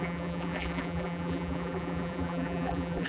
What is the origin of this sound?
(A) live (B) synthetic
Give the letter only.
B